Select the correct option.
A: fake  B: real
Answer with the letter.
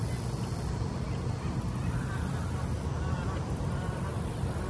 B